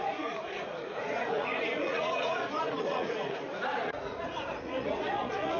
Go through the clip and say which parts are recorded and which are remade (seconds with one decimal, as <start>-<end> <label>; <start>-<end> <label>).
0.0-5.6 remade